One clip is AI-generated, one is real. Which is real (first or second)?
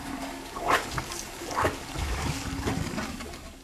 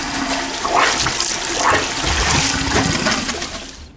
second